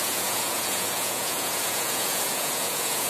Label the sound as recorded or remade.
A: remade